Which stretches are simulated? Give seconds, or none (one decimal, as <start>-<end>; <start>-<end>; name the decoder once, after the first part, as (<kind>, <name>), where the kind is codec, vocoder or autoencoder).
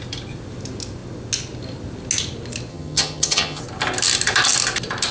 2.7-3.6 (vocoder, HiFi-GAN)